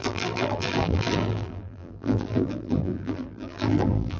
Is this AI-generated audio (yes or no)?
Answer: yes